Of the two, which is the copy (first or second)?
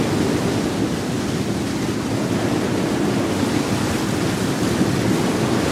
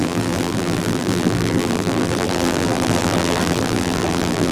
second